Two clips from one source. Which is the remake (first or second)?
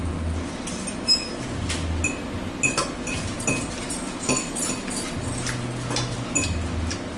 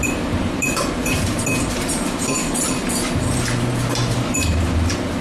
second